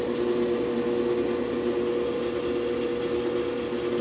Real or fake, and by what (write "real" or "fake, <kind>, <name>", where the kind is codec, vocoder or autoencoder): real